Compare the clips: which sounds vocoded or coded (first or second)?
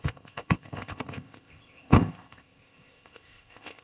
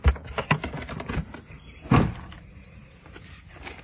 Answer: first